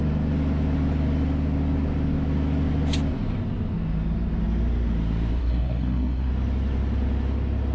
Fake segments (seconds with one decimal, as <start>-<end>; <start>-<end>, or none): 5.4-6.3